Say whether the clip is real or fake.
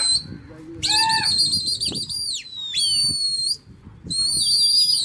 real